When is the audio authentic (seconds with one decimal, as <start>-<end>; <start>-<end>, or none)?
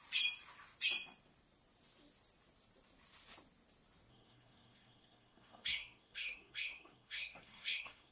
0.0-4.1